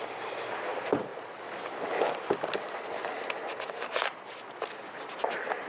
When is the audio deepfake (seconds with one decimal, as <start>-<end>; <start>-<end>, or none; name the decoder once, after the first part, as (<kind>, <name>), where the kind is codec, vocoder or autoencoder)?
none